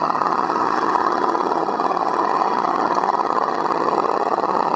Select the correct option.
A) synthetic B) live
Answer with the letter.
A